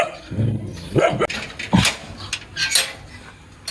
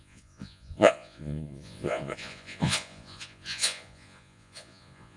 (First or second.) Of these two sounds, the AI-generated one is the second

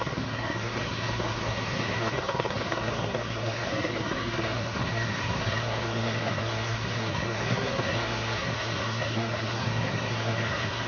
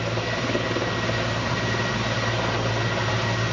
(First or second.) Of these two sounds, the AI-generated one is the first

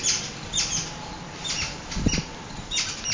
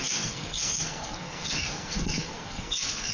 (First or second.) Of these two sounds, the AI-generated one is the second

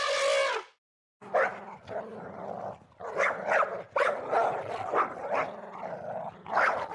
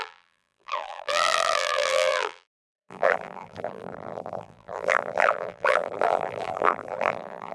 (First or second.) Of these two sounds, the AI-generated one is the second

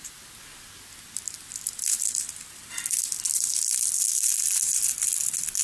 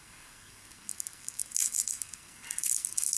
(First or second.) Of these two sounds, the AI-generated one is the second